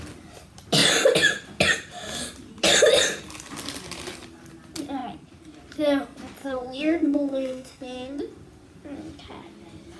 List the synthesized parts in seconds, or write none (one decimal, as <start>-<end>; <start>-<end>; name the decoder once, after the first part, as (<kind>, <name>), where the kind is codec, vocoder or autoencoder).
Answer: 6.4-8.2 (codec, SNAC)